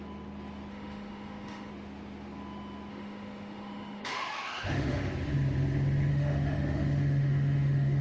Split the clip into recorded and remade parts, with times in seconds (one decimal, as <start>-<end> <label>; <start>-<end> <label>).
0.0-0.7 recorded; 0.7-1.7 remade; 1.7-2.9 recorded; 2.9-5.1 remade; 5.1-6.1 recorded; 6.1-8.0 remade